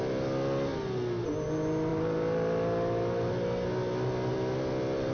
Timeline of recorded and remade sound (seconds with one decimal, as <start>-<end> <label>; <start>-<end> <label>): 0.0-5.1 recorded